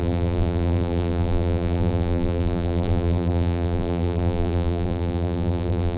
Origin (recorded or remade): remade